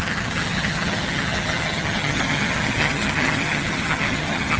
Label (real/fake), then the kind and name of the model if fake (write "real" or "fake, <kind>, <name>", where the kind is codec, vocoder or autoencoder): fake, vocoder, HiFi-GAN